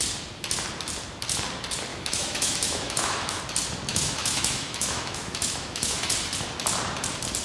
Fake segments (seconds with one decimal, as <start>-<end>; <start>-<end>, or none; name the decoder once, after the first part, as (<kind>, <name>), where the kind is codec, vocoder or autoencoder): 1.9-3.4 (autoencoder, DAC-VAE); 3.9-6.1